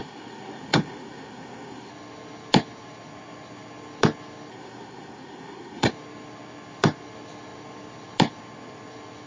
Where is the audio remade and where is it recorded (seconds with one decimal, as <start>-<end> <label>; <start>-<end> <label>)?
0.0-1.9 remade; 1.9-4.5 recorded; 4.5-5.9 remade; 5.9-9.3 recorded